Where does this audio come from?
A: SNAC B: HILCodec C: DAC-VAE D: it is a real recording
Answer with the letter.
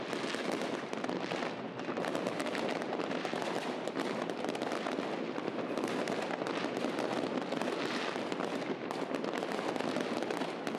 D